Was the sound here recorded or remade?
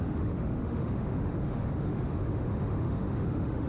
remade